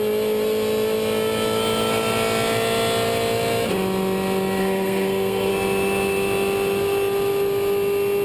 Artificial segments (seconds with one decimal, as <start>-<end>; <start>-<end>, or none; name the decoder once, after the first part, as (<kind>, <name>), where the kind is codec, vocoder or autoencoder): 4.6-5.5 (codec, SNAC)